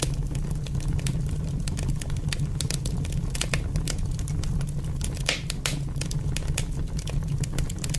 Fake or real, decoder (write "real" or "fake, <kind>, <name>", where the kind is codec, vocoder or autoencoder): real